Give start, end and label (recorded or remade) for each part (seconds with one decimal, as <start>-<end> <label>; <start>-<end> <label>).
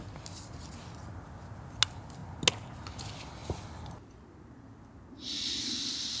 0.0-3.4 recorded; 3.4-4.4 remade; 4.4-6.2 recorded